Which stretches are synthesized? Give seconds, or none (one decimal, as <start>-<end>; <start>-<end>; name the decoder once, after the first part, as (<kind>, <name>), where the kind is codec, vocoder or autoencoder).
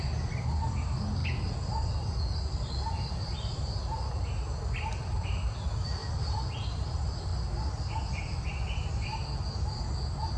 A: none